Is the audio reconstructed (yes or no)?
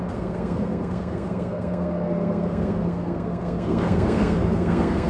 yes